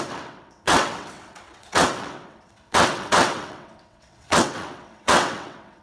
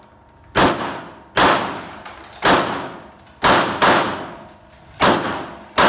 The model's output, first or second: first